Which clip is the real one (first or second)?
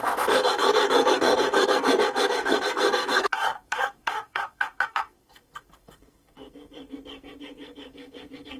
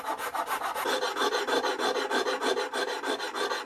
second